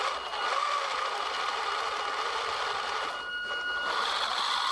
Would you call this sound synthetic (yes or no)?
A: no